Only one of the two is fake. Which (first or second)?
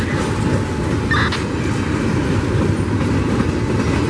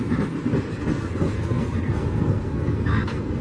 second